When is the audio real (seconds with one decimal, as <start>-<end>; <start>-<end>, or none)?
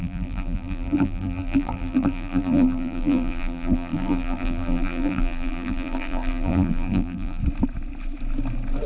7.4-8.9